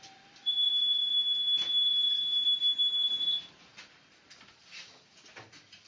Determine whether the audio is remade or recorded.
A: remade